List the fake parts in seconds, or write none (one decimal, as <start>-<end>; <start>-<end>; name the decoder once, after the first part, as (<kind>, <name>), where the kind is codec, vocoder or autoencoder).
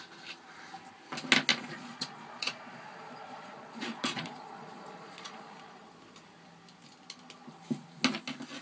1.5-5.9 (vocoder, Vocos)